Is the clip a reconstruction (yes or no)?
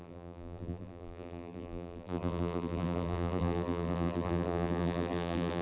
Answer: yes